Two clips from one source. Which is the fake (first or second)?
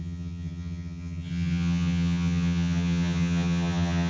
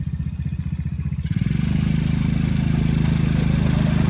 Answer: first